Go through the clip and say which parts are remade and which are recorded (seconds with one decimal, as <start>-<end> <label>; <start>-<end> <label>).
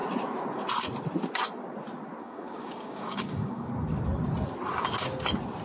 0.0-2.2 recorded; 2.2-3.7 remade; 3.7-5.6 recorded